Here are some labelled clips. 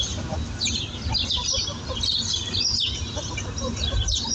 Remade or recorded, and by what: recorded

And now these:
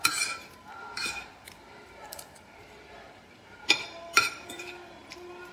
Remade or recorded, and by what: remade, vocoder, BigVGAN v2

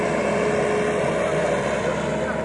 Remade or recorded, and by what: recorded